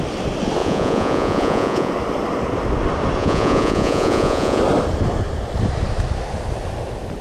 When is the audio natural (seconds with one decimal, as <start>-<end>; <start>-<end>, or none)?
0.0-0.6; 1.9-3.2; 4.6-7.2